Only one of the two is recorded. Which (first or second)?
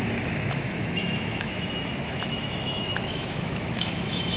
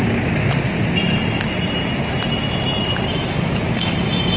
second